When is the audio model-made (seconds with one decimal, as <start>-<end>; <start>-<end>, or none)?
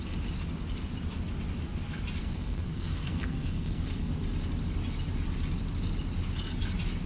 2.2-4.1